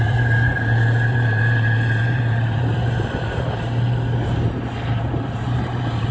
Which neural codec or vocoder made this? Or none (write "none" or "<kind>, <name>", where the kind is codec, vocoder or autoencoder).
vocoder, BigVGAN v2